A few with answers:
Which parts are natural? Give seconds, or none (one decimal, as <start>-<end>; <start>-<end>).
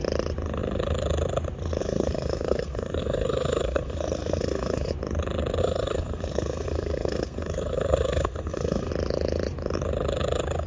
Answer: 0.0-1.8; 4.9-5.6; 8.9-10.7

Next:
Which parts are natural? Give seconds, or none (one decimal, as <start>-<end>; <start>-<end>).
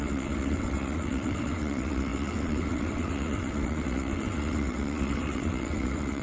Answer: none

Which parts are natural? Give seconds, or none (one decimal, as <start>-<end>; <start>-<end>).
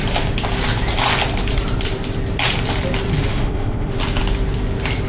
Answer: 0.0-3.3; 3.9-5.1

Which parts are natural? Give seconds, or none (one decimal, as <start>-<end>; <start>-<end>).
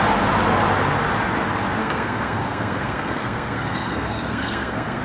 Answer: 0.0-1.8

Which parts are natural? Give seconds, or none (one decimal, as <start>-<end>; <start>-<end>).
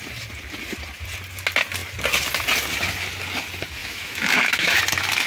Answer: 0.0-3.8; 4.8-5.3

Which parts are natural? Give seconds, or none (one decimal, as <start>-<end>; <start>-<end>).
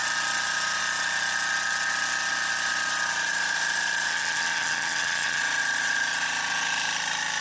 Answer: 0.0-4.1; 5.4-7.4